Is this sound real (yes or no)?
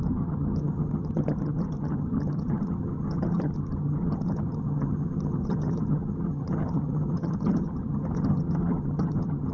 no